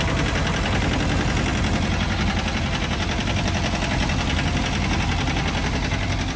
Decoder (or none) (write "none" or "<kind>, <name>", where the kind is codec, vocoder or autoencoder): none